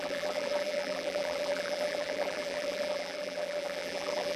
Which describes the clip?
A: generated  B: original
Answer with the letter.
A